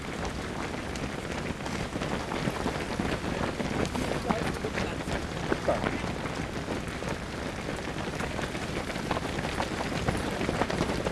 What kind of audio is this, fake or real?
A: real